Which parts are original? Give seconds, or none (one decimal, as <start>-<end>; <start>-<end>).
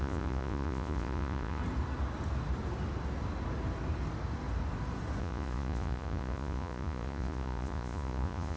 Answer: 1.6-5.2